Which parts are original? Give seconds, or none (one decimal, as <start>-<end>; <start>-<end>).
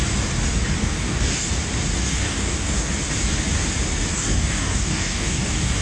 0.0-0.8; 1.5-2.0; 2.9-4.1